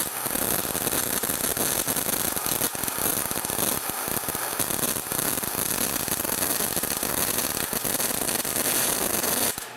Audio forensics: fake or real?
fake